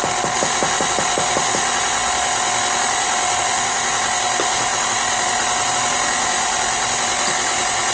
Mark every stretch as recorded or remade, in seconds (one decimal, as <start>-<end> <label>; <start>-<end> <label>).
0.0-4.7 recorded; 4.7-5.7 remade; 5.7-7.9 recorded